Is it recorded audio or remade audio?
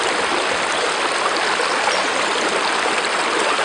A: recorded